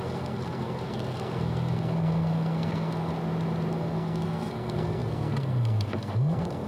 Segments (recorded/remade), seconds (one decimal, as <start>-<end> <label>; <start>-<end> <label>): 0.0-3.1 remade; 3.1-3.7 recorded; 3.7-6.7 remade